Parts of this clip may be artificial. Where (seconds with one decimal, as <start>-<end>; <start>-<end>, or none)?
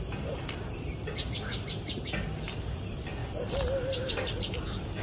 none